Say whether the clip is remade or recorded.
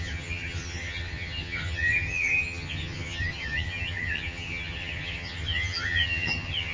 remade